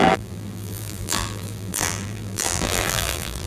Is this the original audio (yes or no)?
no